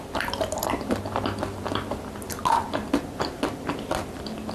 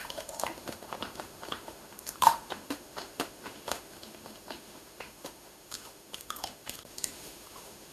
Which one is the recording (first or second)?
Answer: first